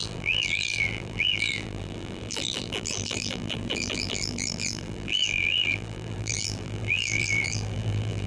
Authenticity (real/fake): fake